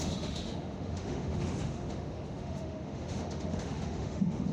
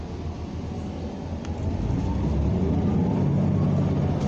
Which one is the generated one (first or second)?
first